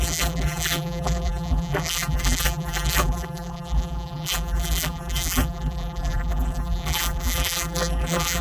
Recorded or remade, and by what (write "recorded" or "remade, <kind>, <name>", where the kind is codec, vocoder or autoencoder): remade, vocoder, BigVGAN v2